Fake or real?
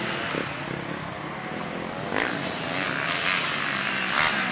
real